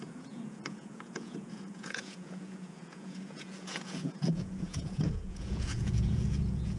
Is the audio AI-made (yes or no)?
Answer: yes